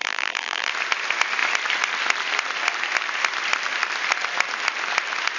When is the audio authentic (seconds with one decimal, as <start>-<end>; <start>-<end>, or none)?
0.7-5.4